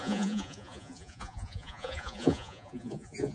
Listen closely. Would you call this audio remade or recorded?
remade